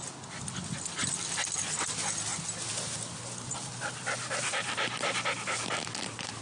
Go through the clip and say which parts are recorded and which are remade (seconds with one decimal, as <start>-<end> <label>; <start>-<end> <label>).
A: 0.0-1.0 recorded; 1.0-1.6 remade; 1.6-6.4 recorded